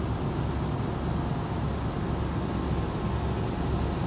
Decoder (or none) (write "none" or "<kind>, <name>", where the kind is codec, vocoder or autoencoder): none